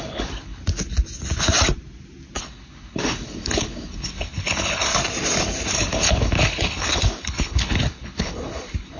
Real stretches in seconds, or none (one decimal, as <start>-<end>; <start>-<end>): 0.6-2.4; 4.9-5.7